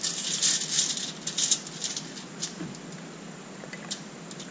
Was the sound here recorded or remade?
recorded